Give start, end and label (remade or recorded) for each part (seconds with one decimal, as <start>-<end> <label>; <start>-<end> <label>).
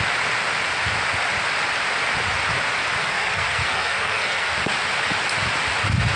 0.0-3.0 recorded; 3.0-4.6 remade; 4.6-6.2 recorded